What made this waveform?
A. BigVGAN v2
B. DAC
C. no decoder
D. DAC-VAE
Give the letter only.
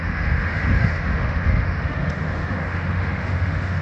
D